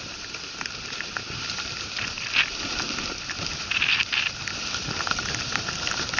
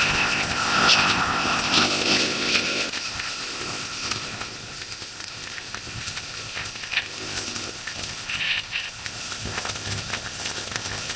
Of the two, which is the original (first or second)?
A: first